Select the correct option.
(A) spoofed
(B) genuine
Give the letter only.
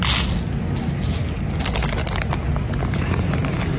B